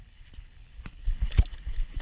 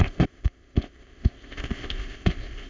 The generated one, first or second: second